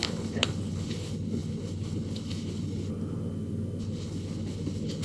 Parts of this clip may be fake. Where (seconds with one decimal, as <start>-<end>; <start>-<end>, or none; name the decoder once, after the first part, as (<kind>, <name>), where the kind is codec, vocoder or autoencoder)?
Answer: 0.0-2.9 (codec, HILCodec); 3.8-5.0